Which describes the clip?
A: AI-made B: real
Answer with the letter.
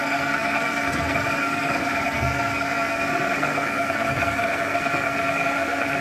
A